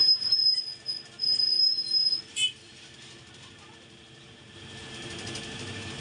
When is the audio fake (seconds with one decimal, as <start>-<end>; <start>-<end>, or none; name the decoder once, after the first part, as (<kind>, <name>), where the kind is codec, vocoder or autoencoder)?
0.0-0.4 (vocoder, BigVGAN v2); 2.2-6.0